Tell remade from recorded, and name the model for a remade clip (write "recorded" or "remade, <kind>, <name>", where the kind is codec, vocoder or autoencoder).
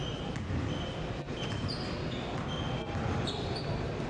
recorded